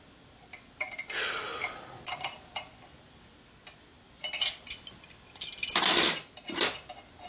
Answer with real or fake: real